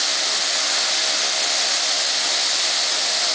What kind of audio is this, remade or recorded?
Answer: recorded